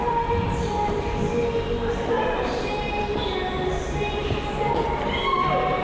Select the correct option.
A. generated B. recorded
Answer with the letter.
A